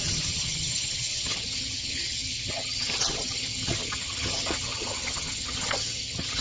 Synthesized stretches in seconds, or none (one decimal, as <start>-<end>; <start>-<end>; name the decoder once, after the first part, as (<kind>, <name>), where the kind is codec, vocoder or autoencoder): 0.0-6.4 (vocoder, HiFi-GAN)